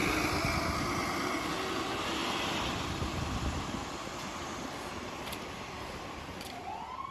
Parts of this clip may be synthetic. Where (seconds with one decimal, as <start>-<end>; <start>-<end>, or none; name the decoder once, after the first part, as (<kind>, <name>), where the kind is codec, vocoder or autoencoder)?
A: 2.2-6.2 (vocoder, BigVGAN v2)